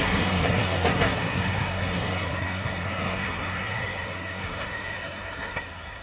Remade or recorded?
remade